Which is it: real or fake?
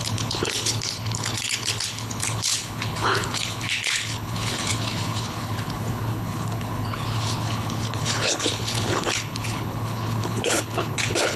fake